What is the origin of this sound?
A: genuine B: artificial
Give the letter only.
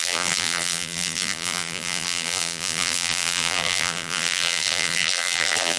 B